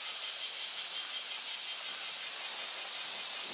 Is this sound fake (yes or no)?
no